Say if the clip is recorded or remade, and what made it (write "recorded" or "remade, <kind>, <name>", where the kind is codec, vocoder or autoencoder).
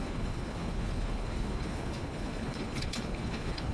remade, codec, HILCodec